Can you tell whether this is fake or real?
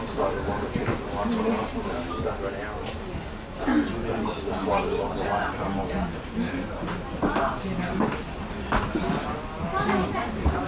real